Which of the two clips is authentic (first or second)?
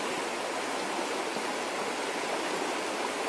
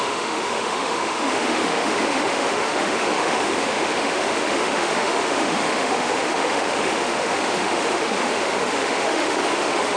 first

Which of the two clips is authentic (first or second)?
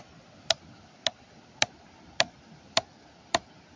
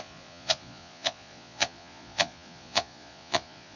first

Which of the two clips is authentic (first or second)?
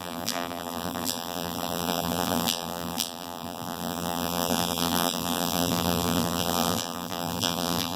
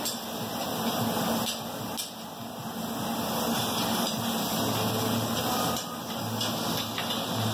second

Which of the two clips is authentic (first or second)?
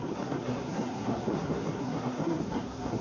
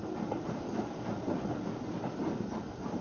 second